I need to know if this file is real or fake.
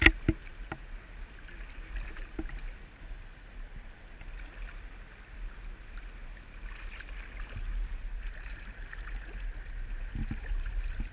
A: real